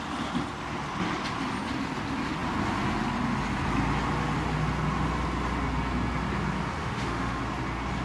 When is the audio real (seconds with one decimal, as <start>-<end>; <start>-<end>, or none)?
0.0-6.8; 7.4-8.0